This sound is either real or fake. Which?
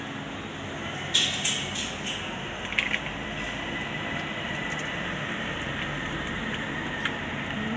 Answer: real